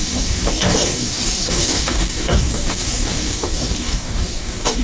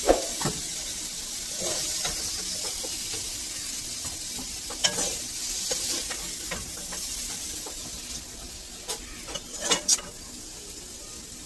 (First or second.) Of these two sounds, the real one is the second